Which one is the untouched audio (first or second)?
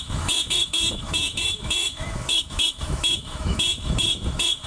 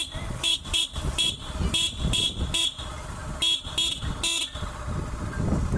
second